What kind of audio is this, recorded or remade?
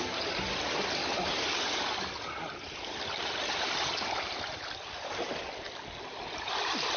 recorded